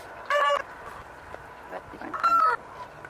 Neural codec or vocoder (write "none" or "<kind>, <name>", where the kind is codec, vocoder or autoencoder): none